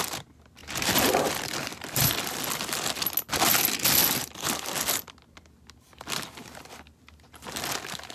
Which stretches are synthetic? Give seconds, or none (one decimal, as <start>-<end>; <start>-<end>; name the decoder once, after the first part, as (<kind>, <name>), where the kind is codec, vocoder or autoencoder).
0.6-2.2 (vocoder, BigVGAN v2); 4.0-6.1